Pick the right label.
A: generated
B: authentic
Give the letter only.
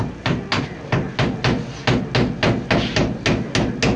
B